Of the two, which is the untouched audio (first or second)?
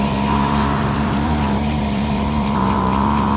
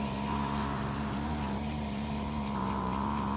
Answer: second